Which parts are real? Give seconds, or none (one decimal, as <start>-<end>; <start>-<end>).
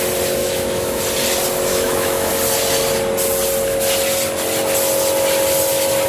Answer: 0.0-0.4; 1.0-1.7; 2.3-6.1